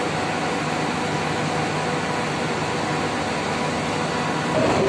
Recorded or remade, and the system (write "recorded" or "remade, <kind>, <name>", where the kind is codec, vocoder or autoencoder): recorded